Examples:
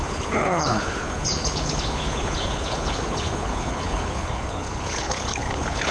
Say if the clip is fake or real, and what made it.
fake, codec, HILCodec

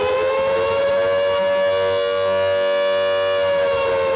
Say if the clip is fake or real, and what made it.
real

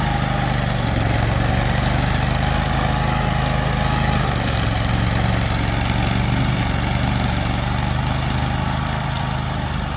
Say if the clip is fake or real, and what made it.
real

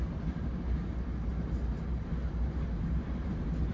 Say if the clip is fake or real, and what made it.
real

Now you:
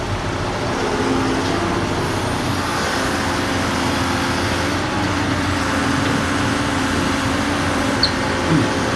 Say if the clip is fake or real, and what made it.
real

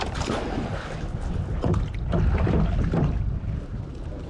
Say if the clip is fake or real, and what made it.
real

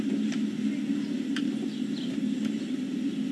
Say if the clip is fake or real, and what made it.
real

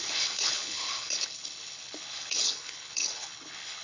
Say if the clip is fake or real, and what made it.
fake, codec, HILCodec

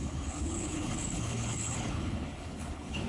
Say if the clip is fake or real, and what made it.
fake, codec, HILCodec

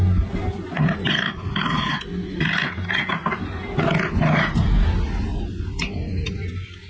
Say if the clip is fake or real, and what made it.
real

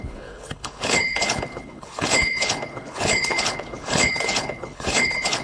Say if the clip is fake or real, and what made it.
fake, codec, HILCodec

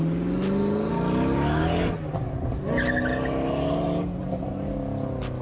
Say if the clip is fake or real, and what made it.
real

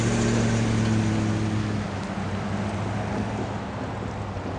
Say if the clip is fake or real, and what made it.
real